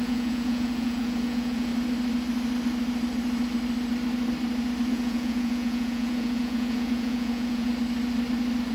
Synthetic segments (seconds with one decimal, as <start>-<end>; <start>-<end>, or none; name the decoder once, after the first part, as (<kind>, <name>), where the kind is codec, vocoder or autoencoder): 0.0-1.7 (vocoder, Vocos); 4.9-7.7